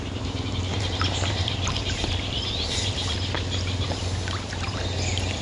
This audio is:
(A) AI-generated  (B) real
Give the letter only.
A